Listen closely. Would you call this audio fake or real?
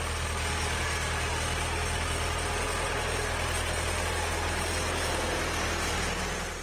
real